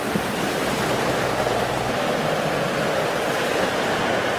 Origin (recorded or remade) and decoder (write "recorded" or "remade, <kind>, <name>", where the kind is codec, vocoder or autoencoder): remade, vocoder, BigVGAN v2